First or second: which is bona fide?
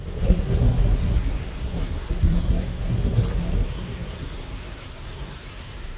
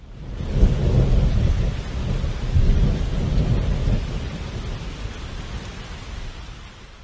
second